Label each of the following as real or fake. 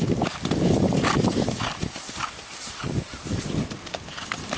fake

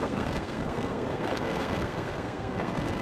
fake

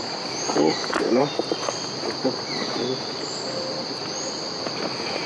real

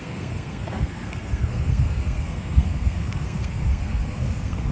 fake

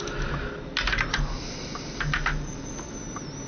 real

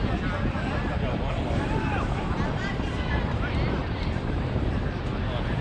real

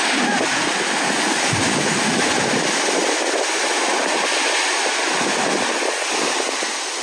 real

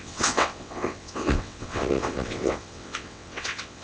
fake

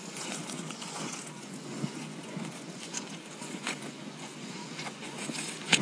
fake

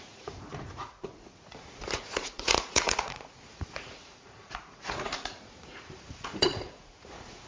fake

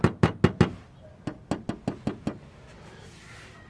real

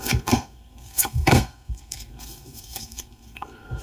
fake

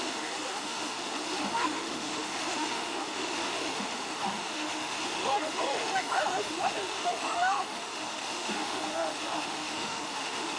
fake